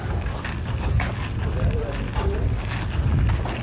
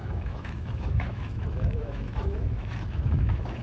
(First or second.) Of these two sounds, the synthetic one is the second